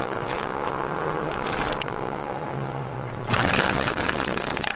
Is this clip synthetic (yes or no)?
yes